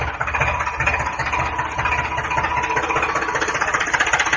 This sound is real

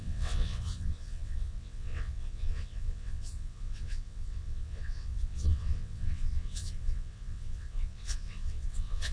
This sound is fake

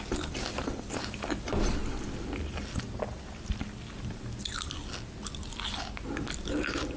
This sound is real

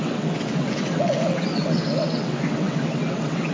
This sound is fake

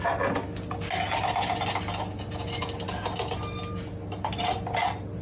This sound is real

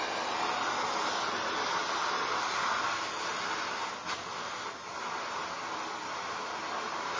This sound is real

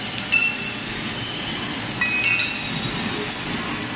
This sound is real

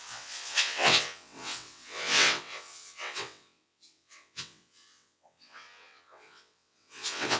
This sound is fake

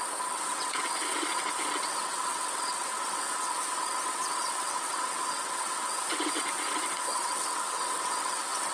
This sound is fake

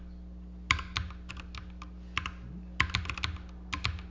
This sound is real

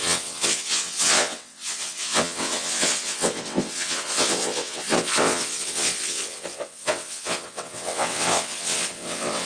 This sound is fake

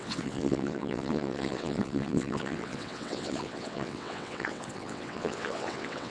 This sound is fake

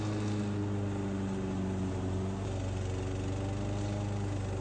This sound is real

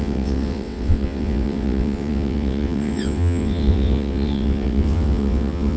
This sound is fake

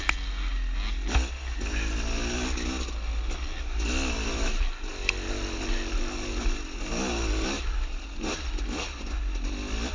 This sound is real